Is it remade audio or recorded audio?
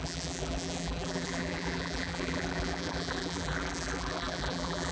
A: remade